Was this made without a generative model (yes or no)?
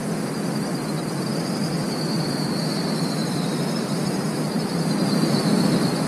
yes